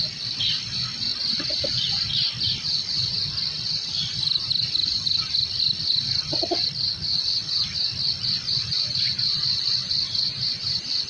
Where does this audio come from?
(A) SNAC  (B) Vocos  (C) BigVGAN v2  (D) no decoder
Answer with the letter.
D